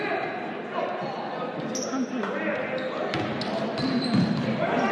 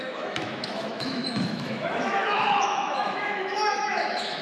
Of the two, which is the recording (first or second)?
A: first